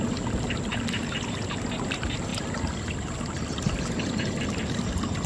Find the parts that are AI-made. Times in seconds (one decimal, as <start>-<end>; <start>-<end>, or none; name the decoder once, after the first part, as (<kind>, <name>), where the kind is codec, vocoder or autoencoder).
0.0-2.3 (vocoder, BigVGAN v2); 3.3-5.3